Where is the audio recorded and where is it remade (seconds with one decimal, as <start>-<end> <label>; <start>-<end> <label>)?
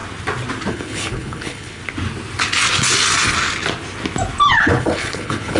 0.0-0.7 recorded; 0.7-1.8 remade; 1.8-4.5 recorded; 4.5-5.6 remade